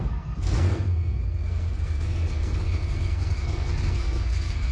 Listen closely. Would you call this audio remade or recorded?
remade